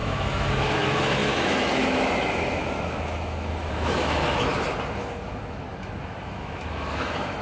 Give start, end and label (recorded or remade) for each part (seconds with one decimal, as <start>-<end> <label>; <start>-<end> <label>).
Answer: 0.0-4.5 remade; 4.5-5.0 recorded; 5.0-7.4 remade